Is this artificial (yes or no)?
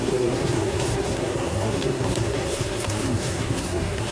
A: yes